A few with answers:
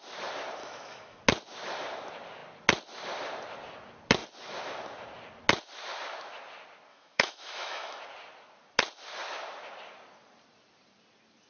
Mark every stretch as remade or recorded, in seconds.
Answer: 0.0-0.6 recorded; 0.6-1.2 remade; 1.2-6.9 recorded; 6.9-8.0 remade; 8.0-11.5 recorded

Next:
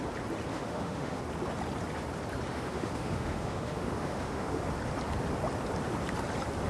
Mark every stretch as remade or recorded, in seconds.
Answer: 0.0-0.5 recorded; 0.5-1.2 remade; 1.2-2.5 recorded; 2.5-4.6 remade; 4.6-6.7 recorded

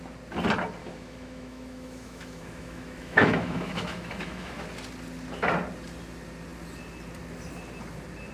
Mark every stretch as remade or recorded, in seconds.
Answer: 0.0-0.8 recorded; 0.8-4.6 remade; 4.6-8.3 recorded

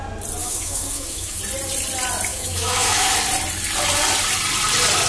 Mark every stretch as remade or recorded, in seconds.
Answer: 0.0-0.4 recorded; 0.4-1.4 remade; 1.4-2.3 recorded; 2.3-3.1 remade; 3.1-5.1 recorded

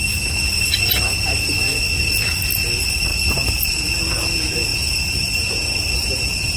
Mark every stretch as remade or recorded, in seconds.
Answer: 0.0-4.7 recorded; 4.7-6.6 remade

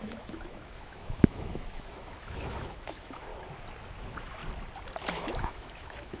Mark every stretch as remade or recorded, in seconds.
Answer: 0.0-3.3 remade; 3.3-3.9 recorded; 3.9-4.4 remade; 4.4-5.1 recorded; 5.1-6.2 remade